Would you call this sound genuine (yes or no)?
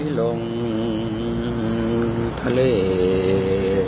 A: yes